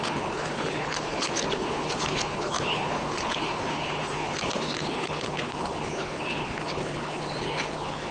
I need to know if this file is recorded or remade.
remade